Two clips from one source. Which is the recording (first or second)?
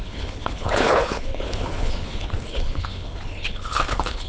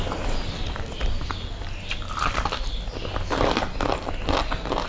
second